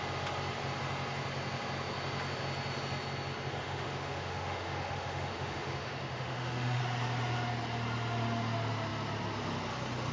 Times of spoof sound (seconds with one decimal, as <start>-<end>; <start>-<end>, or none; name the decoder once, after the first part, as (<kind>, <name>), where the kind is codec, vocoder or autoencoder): 3.6-6.8 (autoencoder, DAC-VAE)